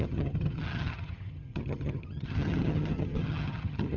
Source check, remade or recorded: remade